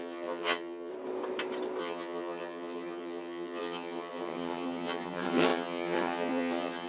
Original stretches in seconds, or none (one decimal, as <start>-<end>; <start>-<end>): 0.9-1.8